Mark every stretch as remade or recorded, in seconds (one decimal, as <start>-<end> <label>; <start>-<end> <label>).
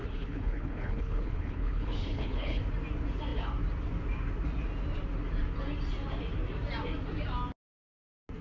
0.0-2.6 remade; 2.6-8.4 recorded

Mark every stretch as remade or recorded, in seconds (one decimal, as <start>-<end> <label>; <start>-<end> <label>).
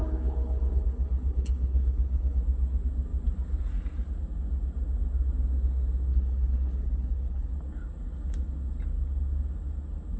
0.0-2.4 remade; 2.4-6.1 recorded; 6.1-7.5 remade; 7.5-10.2 recorded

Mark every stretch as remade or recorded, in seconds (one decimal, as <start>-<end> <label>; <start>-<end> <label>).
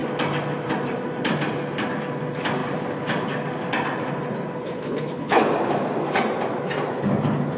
0.0-4.6 recorded; 4.6-5.4 remade; 5.4-7.6 recorded